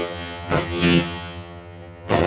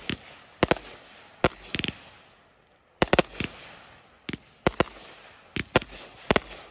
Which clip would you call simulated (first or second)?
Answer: first